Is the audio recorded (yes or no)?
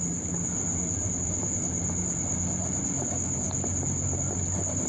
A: yes